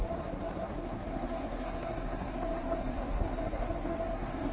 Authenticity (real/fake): fake